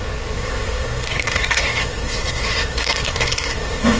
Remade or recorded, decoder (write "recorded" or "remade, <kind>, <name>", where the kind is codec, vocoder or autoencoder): remade, codec, SNAC